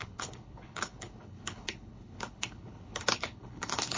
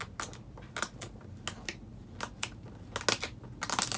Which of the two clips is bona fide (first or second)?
second